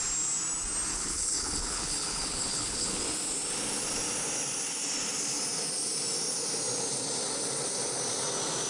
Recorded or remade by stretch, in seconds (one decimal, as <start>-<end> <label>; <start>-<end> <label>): 0.0-0.9 recorded; 0.9-3.0 remade; 3.0-8.7 recorded

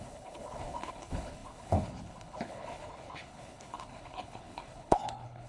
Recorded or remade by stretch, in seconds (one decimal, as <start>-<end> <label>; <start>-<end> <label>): 0.0-5.5 remade